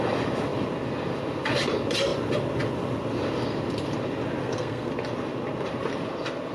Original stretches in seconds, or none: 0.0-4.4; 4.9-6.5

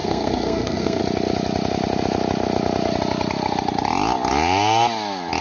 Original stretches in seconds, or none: 1.0-5.4

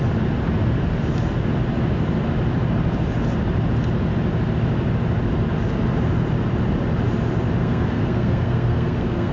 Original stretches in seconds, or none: 0.0-7.6

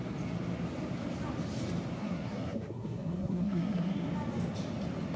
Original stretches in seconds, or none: 0.0-2.0; 4.1-5.2

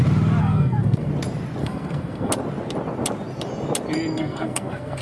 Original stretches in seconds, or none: 0.0-0.4; 1.1-1.6; 2.3-4.1

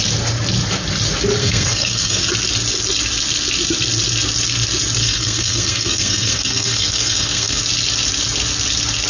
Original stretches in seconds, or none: 0.0-1.4; 2.2-5.0; 7.6-9.1

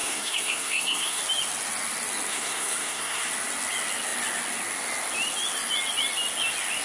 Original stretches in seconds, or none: 1.2-2.3; 3.3-6.8